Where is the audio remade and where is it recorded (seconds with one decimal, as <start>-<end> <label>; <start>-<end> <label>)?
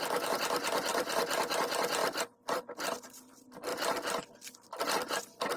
0.0-0.9 recorded; 0.9-1.5 remade; 1.5-2.0 recorded; 2.0-3.3 remade; 3.3-5.6 recorded